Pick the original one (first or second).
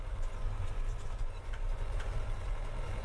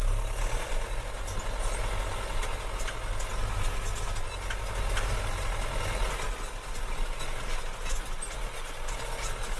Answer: second